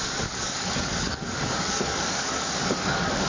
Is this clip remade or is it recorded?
remade